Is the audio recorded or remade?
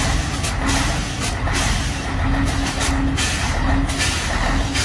recorded